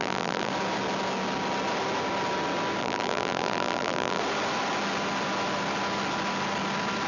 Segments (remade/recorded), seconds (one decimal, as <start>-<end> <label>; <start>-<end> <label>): 0.0-0.5 remade; 0.5-2.8 recorded; 2.8-4.2 remade; 4.2-7.1 recorded